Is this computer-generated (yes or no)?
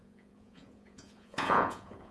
yes